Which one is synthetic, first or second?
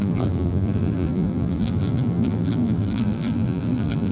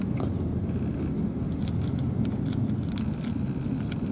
first